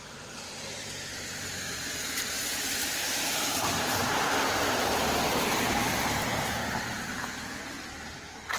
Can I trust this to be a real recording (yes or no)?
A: no